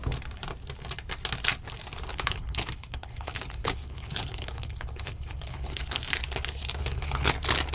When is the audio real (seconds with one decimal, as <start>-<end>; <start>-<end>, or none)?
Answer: 0.0-2.1; 6.0-6.8; 7.3-7.7